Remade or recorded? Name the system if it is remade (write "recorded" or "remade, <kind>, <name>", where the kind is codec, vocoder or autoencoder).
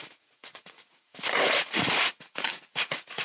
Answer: remade, vocoder, Vocos